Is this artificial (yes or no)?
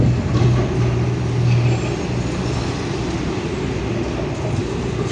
no